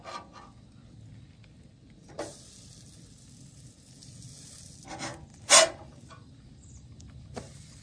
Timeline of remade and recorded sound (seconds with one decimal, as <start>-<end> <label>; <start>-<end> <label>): 0.0-5.3 recorded; 5.3-7.8 remade